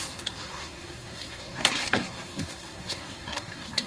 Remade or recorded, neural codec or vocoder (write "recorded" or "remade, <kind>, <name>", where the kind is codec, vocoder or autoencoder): remade, codec, SNAC